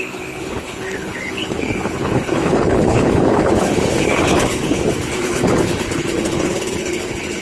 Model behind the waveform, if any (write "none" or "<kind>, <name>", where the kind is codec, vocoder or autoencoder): codec, HILCodec